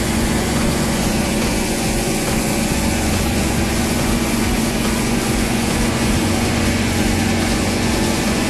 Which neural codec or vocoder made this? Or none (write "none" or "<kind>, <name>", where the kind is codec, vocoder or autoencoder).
vocoder, Vocos